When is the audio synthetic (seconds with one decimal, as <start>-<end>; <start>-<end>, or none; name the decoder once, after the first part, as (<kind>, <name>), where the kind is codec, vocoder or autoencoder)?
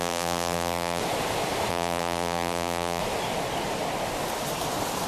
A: 0.0-1.0 (vocoder, BigVGAN v2); 1.7-3.0